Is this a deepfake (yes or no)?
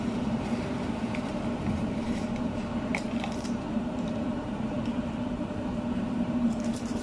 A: yes